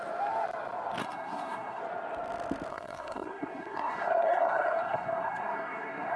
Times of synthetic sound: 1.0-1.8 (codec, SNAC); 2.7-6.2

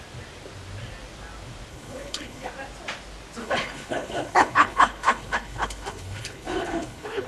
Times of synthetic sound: 1.7-2.5 (codec, HILCodec); 3.4-7.3

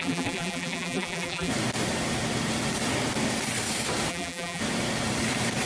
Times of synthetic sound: 0.0-1.5 (vocoder, BigVGAN v2); 4.1-4.6

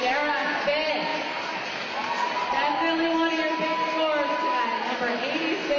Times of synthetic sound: none